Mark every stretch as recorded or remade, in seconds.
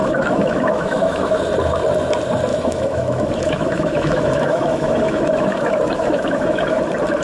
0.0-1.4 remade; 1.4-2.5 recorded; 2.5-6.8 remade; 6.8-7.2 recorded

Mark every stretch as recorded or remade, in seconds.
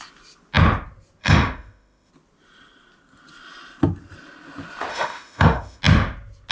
0.0-1.2 recorded; 1.2-2.1 remade; 2.1-4.9 recorded; 4.9-5.8 remade; 5.8-6.5 recorded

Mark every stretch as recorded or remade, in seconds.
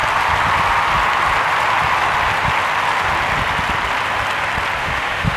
0.0-4.8 recorded; 4.8-5.4 remade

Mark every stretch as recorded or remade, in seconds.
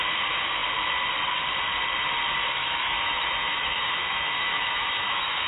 0.0-2.6 recorded; 2.6-5.5 remade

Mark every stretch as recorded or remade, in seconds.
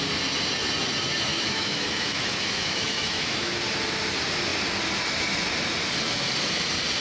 0.0-1.3 recorded; 1.3-3.6 remade; 3.6-7.0 recorded